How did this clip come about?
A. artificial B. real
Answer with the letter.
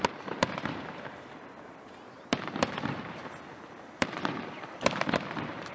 A